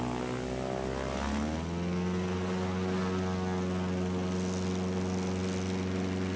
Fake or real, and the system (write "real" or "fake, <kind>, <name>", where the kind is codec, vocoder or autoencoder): real